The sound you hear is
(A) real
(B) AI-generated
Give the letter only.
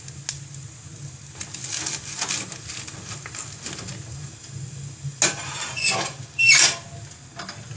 A